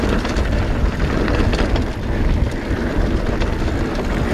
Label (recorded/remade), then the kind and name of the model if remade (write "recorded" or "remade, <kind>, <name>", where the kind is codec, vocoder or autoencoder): recorded